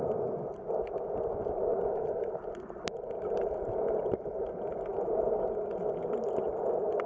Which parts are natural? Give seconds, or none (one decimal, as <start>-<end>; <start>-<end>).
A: 0.0-7.1